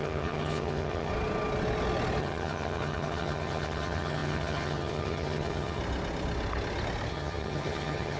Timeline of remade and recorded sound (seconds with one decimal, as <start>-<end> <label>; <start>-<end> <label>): 0.0-1.1 remade; 1.1-2.2 recorded; 2.2-5.8 remade; 5.8-7.1 recorded; 7.1-8.2 remade